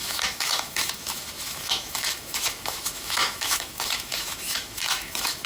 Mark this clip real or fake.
fake